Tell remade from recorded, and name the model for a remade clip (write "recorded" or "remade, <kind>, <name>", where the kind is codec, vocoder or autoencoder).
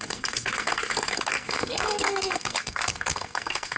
remade, codec, SNAC